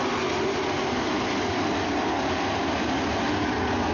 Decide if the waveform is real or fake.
real